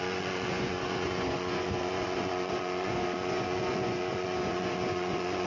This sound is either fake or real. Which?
fake